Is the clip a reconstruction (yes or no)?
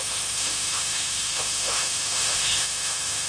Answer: yes